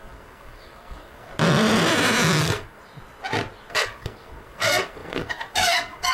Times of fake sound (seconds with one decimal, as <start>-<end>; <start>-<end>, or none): 0.0-1.3; 2.4-2.8; 3.7-6.1